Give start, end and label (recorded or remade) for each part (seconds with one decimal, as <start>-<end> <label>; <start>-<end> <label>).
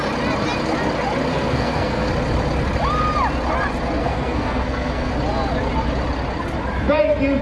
0.0-1.3 recorded; 1.3-2.1 remade; 2.1-4.0 recorded; 4.0-5.1 remade; 5.1-7.4 recorded